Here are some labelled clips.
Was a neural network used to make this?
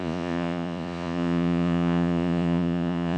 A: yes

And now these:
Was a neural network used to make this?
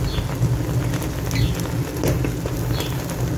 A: no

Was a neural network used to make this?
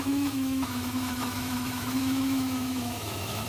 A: yes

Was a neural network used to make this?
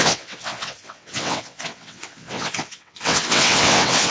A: yes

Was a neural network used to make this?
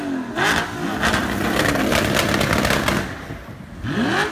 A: no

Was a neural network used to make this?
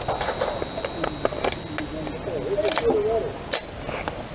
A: no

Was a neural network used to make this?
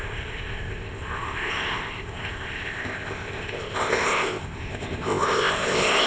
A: yes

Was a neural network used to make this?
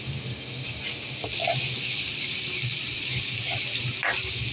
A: no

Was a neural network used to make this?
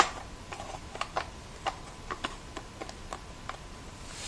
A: no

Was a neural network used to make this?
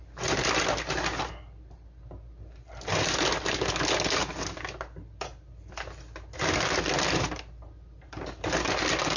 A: no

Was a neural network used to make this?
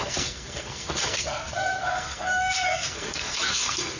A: yes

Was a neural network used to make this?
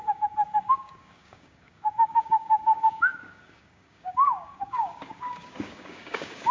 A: yes